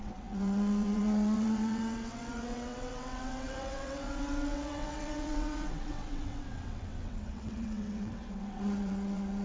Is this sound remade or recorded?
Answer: remade